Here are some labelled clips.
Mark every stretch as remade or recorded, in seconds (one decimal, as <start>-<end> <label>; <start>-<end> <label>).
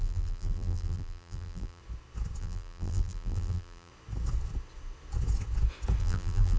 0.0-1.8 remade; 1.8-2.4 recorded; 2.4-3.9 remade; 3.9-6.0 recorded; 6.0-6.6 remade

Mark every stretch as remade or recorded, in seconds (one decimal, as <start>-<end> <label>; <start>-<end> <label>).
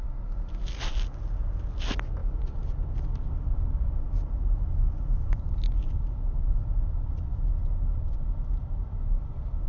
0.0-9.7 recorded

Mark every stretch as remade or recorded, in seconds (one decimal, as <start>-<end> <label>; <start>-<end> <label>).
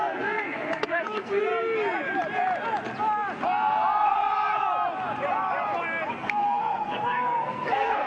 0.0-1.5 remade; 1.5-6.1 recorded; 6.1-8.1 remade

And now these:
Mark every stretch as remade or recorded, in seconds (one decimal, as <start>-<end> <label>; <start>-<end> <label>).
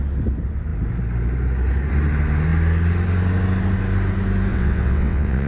0.0-4.5 recorded; 4.5-5.5 remade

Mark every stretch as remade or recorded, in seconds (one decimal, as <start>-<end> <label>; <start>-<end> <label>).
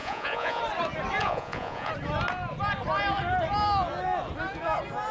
0.0-0.6 remade; 0.6-1.2 recorded; 1.2-1.9 remade; 1.9-5.1 recorded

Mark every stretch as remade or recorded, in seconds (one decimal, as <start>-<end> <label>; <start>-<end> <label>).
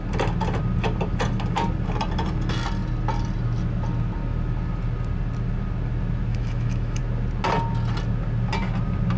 0.0-6.3 recorded; 6.3-7.0 remade; 7.0-9.2 recorded